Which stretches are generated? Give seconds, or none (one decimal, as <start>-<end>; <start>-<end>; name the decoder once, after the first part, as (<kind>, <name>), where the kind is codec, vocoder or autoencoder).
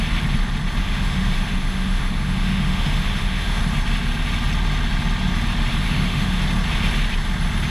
0.8-3.6 (autoencoder, DAC-VAE); 5.8-6.4